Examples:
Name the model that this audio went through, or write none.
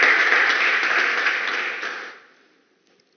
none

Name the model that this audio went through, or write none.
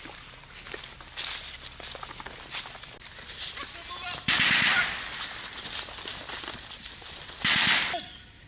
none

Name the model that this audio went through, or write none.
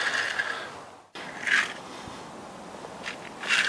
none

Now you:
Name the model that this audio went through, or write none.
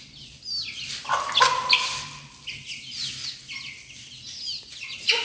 none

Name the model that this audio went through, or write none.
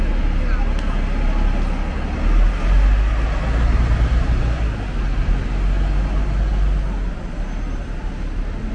none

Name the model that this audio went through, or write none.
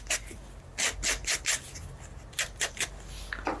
none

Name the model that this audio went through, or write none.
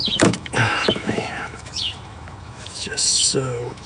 autoencoder, DAC-VAE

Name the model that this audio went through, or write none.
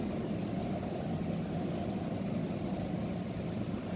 none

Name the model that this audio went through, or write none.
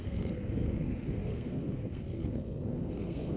codec, SNAC